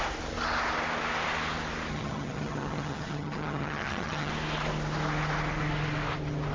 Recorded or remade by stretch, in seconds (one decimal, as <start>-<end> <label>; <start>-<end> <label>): 0.0-1.9 recorded; 1.9-4.3 remade; 4.3-6.5 recorded